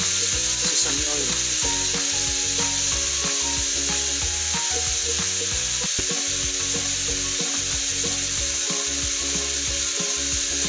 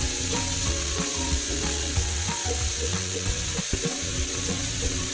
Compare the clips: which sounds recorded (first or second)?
first